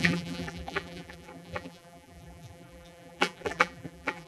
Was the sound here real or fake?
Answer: fake